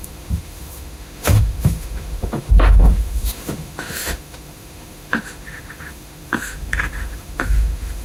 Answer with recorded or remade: remade